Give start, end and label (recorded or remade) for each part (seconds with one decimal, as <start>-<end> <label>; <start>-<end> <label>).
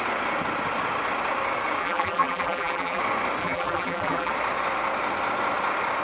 0.0-1.8 recorded; 1.8-3.0 remade; 3.0-3.4 recorded; 3.4-4.3 remade; 4.3-6.0 recorded